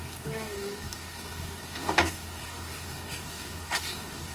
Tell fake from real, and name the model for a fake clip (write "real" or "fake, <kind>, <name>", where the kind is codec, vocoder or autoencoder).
fake, codec, DAC